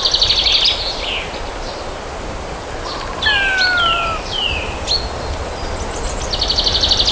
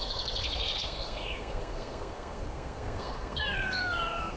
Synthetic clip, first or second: second